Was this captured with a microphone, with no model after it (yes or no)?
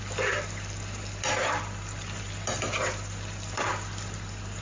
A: no